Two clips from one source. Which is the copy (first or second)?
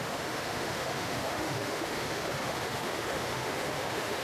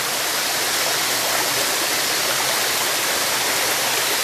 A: first